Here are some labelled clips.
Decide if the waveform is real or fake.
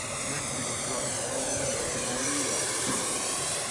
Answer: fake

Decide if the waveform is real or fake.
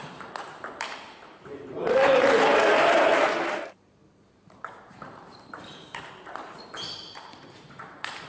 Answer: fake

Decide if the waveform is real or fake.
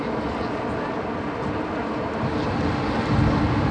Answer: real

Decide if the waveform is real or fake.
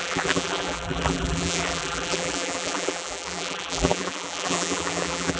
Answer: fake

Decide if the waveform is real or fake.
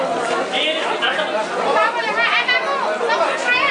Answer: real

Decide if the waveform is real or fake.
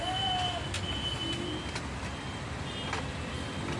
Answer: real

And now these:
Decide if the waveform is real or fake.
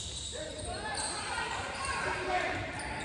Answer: fake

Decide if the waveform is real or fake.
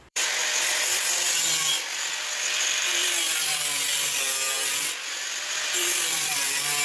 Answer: fake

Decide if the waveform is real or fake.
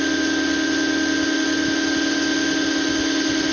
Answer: real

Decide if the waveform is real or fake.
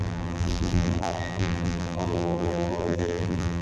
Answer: fake